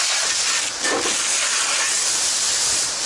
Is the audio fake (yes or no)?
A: no